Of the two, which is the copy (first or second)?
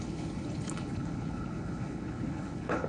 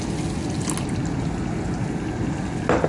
first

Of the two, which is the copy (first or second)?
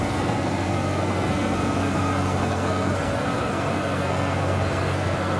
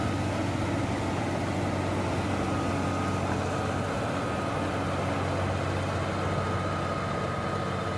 first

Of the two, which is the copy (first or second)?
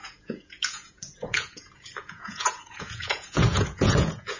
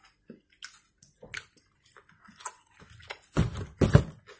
first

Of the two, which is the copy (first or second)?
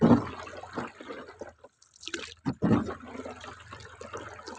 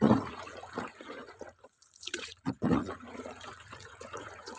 second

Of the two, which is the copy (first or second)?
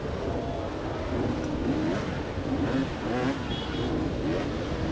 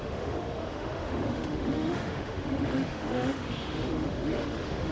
second